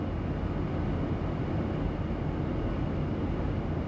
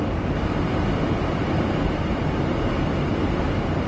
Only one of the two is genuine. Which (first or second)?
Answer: first